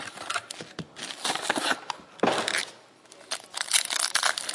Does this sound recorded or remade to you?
recorded